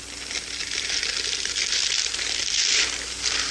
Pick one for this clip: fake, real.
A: real